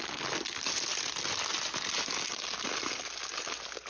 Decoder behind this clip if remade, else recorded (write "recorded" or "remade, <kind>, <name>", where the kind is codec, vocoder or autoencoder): recorded